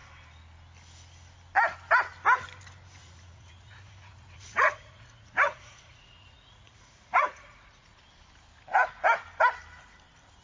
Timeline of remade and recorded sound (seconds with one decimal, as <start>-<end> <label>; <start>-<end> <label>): 0.0-3.0 recorded; 3.0-8.0 remade; 8.0-10.4 recorded